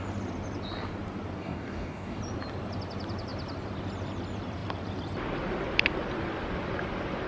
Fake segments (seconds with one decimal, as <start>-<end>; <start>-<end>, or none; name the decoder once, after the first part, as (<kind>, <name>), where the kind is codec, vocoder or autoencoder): 1.4-2.2 (codec, DAC)